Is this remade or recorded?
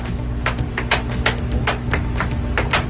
recorded